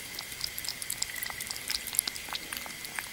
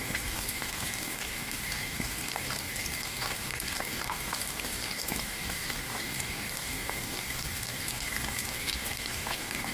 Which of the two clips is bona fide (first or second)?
first